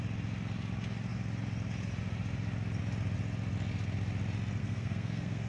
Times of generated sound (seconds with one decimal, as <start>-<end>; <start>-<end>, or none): 4.6-5.5